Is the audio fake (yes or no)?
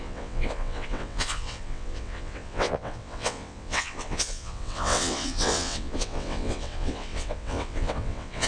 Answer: yes